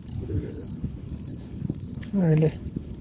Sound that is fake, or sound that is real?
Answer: fake